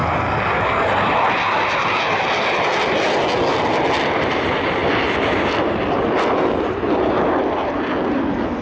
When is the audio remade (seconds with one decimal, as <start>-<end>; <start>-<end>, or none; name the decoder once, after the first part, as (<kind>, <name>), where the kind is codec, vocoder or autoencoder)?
none